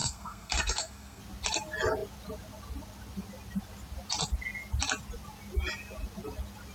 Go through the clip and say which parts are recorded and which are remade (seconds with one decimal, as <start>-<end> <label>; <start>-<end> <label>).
0.0-1.2 remade; 1.2-6.7 recorded